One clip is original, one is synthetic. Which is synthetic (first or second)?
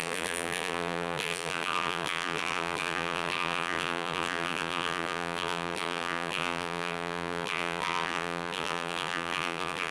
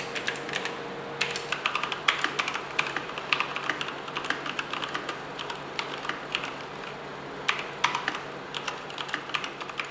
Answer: first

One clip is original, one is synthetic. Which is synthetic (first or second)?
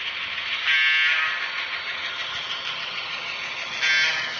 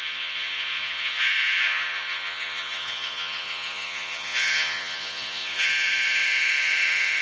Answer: second